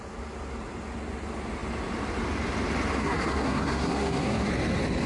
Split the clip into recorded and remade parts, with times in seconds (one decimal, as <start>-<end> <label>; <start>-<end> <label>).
0.0-3.0 recorded; 3.0-4.5 remade; 4.5-5.1 recorded